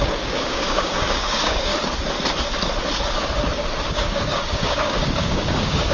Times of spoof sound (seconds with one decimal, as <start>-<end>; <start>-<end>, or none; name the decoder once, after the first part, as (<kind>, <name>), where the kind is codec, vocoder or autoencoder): 0.0-1.7 (codec, DAC); 3.9-5.9

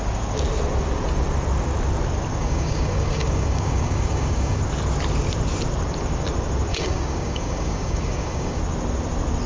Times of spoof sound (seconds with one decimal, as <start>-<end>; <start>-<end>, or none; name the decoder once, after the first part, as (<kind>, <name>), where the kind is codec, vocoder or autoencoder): 2.4-4.6 (codec, DAC); 6.7-8.6

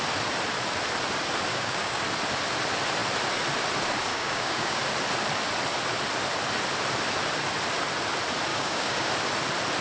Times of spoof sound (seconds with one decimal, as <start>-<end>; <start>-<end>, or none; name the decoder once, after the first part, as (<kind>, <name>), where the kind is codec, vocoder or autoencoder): 1.5-2.0 (codec, DAC); 4.1-4.8; 8.5-9.1

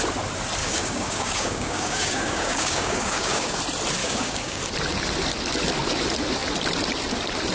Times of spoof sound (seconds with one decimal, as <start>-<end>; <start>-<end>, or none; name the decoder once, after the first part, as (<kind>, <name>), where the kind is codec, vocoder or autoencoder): 0.6-3.6 (codec, DAC); 4.0-4.6

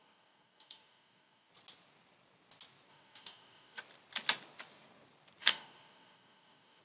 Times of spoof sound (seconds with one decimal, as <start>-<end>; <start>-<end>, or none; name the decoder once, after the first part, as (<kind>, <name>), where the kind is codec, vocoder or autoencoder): 0.0-1.5 (codec, DAC); 2.9-3.8; 5.4-6.8